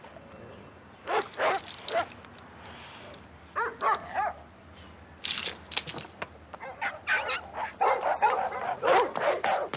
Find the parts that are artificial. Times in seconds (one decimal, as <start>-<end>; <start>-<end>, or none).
none